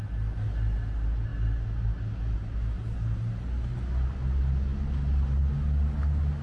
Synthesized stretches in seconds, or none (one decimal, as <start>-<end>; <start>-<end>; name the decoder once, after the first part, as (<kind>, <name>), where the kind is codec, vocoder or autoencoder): none